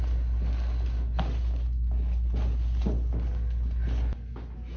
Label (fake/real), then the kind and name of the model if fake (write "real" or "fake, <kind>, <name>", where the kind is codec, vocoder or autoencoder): real